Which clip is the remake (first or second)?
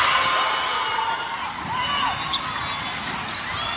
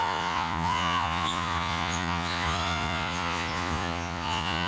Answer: second